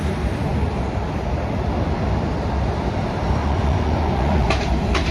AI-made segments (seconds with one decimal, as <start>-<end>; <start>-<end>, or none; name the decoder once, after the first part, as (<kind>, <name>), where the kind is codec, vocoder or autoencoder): 3.4-4.5 (vocoder, Vocos)